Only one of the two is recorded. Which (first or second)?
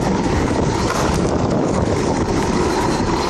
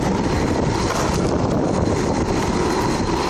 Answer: second